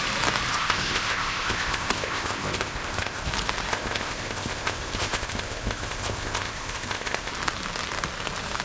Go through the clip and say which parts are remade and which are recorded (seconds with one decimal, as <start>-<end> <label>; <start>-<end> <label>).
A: 0.0-0.5 recorded; 0.5-3.3 remade; 3.3-3.7 recorded; 3.7-7.3 remade; 7.3-8.6 recorded